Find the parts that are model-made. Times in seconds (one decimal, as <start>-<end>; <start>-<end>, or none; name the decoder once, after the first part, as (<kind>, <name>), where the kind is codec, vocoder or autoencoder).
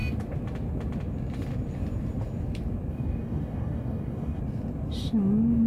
2.9-4.4 (codec, DAC)